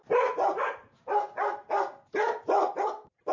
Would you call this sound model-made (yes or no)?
no